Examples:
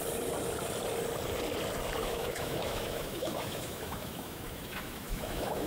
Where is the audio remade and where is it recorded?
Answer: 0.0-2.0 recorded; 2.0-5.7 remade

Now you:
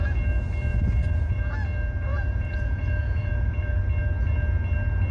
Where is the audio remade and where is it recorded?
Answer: 0.0-0.7 recorded; 0.7-1.4 remade; 1.4-2.1 recorded; 2.1-3.8 remade; 3.8-5.1 recorded

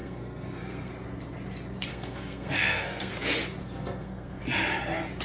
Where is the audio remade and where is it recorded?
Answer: 0.0-0.9 remade; 0.9-1.9 recorded; 1.9-3.1 remade; 3.1-3.6 recorded; 3.6-4.4 remade; 4.4-5.2 recorded